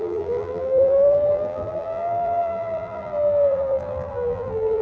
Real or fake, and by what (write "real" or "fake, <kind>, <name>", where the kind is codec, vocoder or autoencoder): fake, vocoder, BigVGAN v2